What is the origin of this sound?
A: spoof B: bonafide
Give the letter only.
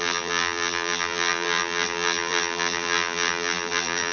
A